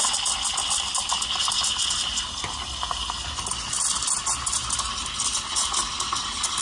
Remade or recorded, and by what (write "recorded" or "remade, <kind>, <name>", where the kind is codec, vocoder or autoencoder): recorded